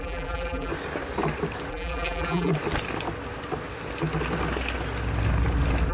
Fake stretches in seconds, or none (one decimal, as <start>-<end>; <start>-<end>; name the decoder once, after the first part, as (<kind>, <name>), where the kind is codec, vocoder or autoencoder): 0.0-0.7 (vocoder, BigVGAN v2); 1.7-2.5